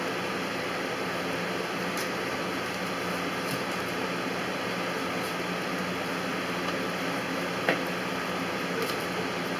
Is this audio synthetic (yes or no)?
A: no